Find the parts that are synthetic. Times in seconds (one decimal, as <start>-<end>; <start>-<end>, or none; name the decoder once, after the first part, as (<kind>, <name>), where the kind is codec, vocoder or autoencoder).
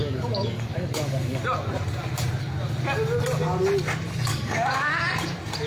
0.0-1.4 (codec, DAC); 4.3-4.9